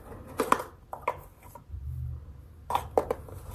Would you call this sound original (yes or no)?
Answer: yes